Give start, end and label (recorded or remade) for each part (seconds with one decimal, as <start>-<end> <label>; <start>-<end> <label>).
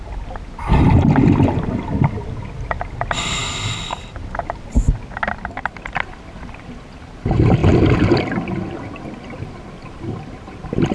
0.0-10.9 recorded